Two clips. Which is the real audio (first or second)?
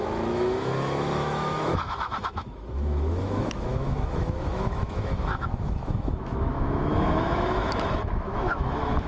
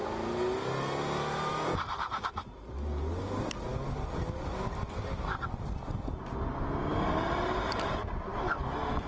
second